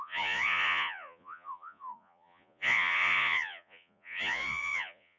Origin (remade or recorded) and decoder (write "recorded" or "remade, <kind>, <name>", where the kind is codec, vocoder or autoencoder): remade, vocoder, Vocos